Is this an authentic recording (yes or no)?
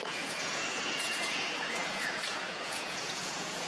no